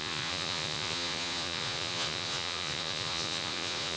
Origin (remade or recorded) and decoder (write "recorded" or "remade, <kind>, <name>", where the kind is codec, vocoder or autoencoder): remade, vocoder, Vocos